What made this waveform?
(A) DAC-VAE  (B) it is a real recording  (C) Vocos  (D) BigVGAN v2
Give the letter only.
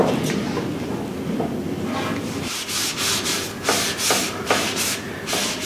B